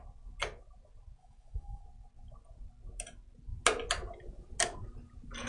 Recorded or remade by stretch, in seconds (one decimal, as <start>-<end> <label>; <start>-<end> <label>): 0.0-1.2 recorded; 1.2-1.8 remade; 1.8-5.5 recorded